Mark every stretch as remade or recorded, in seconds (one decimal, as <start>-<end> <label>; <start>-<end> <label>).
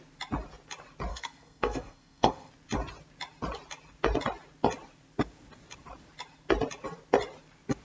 0.0-1.1 recorded; 1.1-2.5 remade; 2.5-7.8 recorded